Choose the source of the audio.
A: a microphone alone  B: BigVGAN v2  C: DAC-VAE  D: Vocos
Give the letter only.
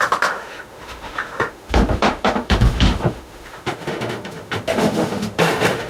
C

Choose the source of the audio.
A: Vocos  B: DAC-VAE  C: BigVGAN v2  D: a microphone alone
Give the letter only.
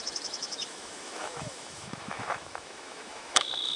B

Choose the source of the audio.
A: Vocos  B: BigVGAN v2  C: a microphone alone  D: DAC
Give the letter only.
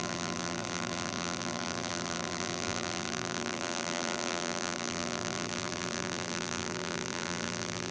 B